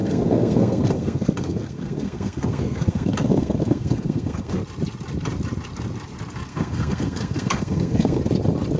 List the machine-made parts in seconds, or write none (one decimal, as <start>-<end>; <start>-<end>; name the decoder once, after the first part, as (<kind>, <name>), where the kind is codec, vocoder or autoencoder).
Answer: 0.0-4.6 (codec, SNAC); 6.5-8.2